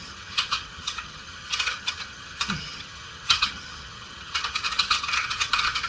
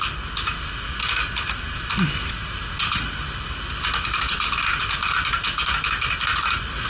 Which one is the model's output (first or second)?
first